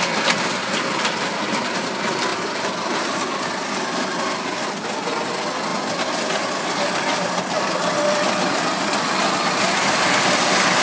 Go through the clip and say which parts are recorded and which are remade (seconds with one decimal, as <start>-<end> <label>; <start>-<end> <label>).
0.0-2.3 recorded; 2.3-3.0 remade; 3.0-10.8 recorded